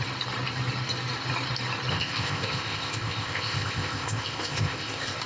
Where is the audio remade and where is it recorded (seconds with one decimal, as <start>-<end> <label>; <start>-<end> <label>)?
0.0-1.9 recorded; 1.9-5.3 remade